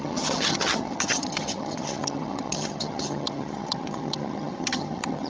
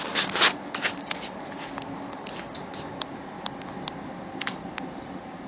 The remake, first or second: first